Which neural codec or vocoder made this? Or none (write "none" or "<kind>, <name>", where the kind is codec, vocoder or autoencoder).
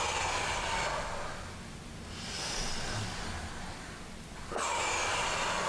none